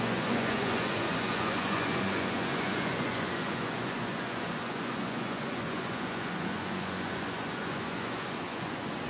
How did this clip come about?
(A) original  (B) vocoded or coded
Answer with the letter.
B